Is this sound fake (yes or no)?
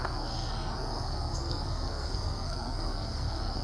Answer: yes